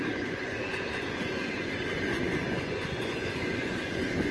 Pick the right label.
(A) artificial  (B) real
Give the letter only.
A